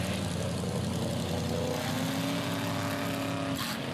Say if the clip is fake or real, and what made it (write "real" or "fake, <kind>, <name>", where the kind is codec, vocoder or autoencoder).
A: real